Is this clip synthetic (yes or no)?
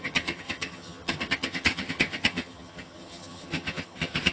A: yes